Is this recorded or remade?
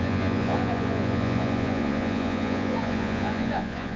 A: remade